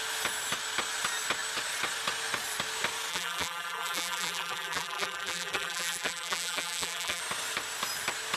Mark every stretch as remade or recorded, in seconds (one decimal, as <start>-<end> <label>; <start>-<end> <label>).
0.0-3.1 recorded; 3.1-7.2 remade; 7.2-8.4 recorded